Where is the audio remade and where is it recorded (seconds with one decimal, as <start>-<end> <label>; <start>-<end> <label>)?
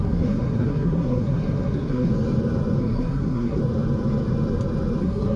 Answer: 0.0-2.1 remade; 2.1-2.8 recorded; 2.8-3.6 remade; 3.6-5.0 recorded; 5.0-5.4 remade